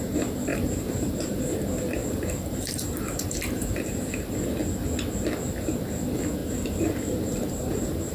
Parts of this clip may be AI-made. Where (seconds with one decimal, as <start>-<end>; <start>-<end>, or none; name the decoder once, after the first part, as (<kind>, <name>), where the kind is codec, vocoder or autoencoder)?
0.5-1.4 (vocoder, BigVGAN v2); 2.0-4.1; 6.4-8.1